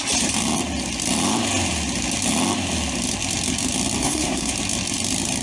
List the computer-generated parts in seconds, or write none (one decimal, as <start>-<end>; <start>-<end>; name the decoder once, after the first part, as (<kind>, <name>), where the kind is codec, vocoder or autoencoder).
4.0-4.5 (codec, SNAC)